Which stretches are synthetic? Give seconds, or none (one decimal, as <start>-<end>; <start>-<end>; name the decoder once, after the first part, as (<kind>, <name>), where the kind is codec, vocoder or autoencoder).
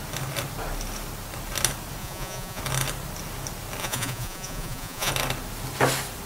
2.0-2.6 (vocoder, Vocos); 3.8-5.1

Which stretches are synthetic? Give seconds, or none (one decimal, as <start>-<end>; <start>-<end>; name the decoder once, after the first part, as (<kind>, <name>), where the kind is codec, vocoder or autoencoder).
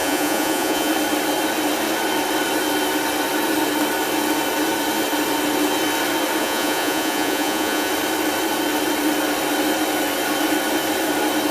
0.0-0.9 (vocoder, Vocos); 6.4-7.9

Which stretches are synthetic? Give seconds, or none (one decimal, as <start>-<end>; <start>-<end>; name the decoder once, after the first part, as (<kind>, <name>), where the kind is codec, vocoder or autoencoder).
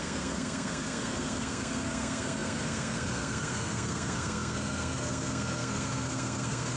0.0-6.8 (codec, SNAC)